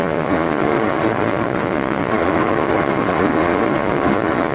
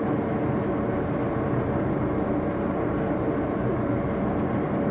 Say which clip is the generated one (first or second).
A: first